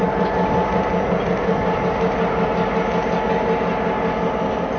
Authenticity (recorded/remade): recorded